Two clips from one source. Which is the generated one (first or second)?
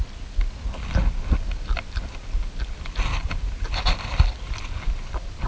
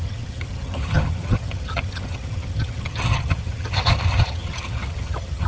second